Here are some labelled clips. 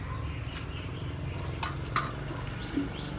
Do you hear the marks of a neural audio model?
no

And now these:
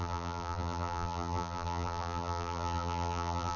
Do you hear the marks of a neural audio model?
yes